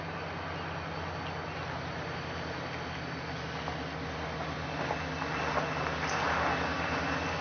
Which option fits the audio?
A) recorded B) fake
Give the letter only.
A